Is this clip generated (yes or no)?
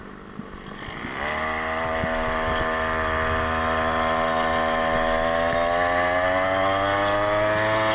no